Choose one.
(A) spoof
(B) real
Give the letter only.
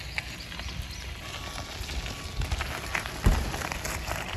B